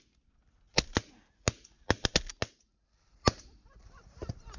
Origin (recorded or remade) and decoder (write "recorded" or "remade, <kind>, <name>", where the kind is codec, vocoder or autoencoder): recorded